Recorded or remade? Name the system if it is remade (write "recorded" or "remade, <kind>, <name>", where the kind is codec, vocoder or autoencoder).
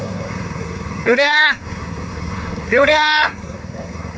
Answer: remade, codec, SNAC